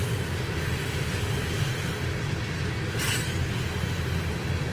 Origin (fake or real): real